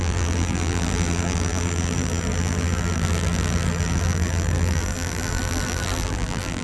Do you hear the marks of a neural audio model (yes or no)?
yes